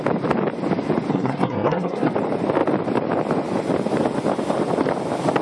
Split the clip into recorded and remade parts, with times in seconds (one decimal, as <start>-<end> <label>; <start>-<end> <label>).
0.0-1.1 recorded; 1.1-2.1 remade; 2.1-5.4 recorded